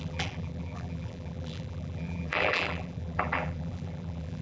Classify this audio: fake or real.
fake